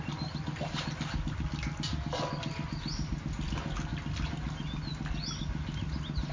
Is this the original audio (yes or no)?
yes